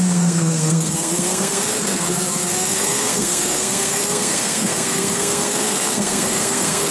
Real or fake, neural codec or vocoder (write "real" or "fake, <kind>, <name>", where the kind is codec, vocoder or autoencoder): fake, codec, SNAC